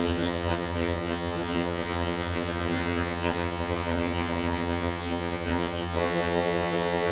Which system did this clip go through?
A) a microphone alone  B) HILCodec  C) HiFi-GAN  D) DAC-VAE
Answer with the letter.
C